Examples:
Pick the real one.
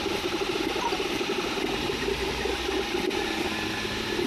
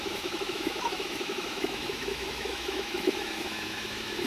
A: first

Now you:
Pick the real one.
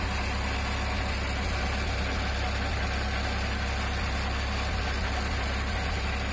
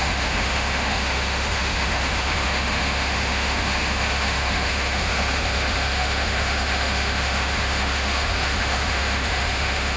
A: first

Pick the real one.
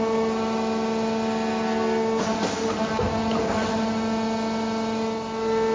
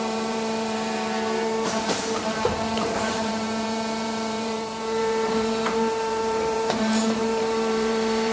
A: first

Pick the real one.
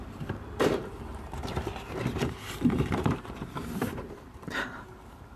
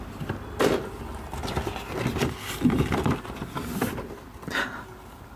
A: second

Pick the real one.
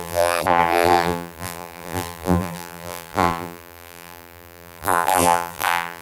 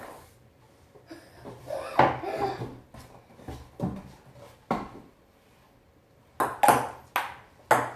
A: second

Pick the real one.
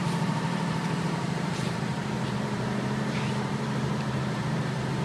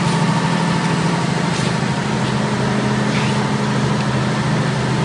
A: second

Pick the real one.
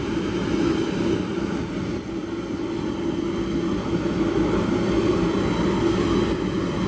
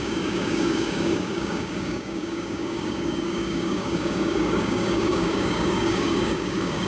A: first